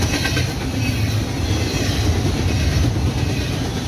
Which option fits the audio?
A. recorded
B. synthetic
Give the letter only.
A